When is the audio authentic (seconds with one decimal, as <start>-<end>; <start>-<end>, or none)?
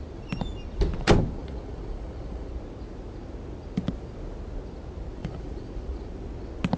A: 0.0-1.4; 2.5-5.2; 6.1-6.8